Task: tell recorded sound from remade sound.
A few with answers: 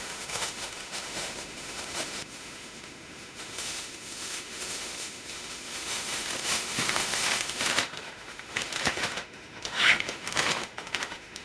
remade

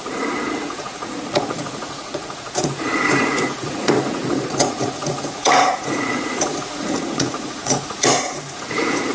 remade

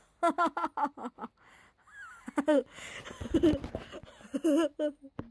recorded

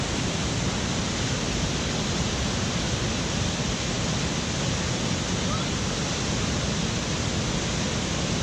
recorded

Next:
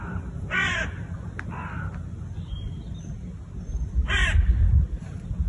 recorded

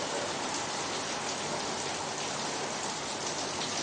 recorded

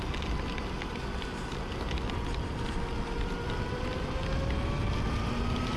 recorded